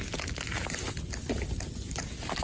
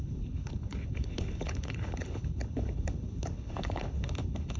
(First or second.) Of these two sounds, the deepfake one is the second